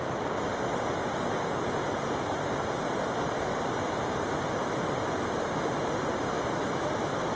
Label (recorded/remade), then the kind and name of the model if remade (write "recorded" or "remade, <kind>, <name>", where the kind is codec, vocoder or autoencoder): recorded